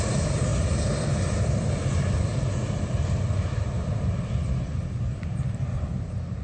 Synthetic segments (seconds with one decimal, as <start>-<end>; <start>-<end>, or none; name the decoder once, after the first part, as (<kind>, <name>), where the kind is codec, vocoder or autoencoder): 0.0-0.5 (vocoder, BigVGAN v2); 1.3-2.3; 5.4-6.4